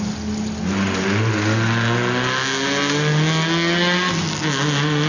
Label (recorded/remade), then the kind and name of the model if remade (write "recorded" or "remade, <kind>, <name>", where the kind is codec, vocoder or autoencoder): recorded